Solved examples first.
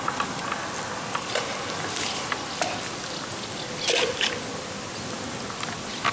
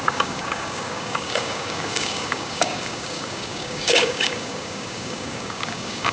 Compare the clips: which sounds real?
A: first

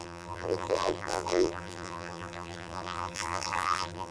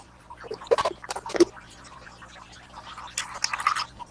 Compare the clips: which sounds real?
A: second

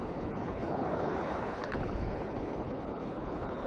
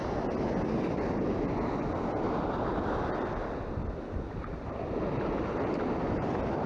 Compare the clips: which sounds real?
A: second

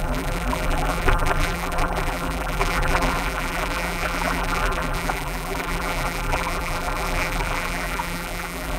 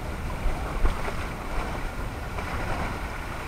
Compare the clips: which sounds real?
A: second